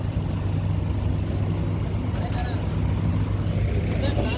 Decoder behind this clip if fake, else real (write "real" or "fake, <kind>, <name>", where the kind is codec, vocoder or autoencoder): real